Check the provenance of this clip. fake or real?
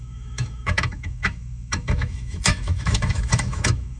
fake